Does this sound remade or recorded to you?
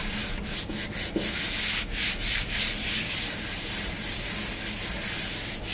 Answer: recorded